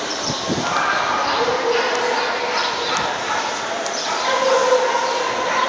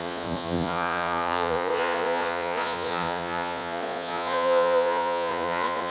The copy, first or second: second